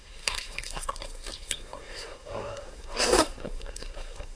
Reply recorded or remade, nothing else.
remade